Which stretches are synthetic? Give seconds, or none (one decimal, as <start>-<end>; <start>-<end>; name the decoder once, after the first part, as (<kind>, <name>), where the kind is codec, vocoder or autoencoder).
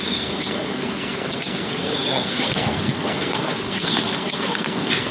0.0-5.1 (codec, SNAC)